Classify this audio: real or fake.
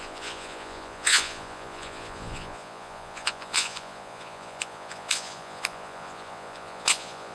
fake